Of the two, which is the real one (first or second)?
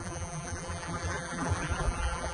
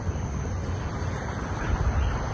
second